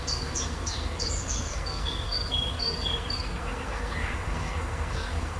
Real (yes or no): no